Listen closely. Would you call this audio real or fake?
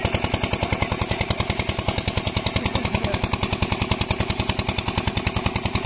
real